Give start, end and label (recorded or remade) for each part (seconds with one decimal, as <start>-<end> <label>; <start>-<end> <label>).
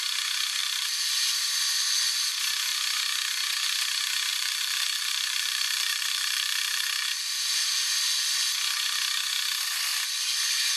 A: 0.0-0.6 recorded; 0.6-1.5 remade; 1.5-4.3 recorded; 4.3-7.9 remade; 7.9-10.8 recorded